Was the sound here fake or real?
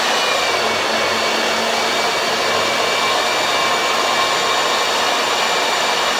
real